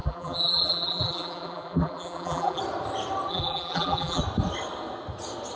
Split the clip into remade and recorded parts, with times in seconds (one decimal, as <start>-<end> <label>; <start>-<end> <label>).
0.0-2.6 remade; 2.6-3.3 recorded; 3.3-4.2 remade; 4.2-5.5 recorded